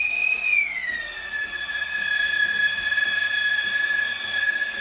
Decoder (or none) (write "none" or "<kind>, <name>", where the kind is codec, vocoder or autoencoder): vocoder, Vocos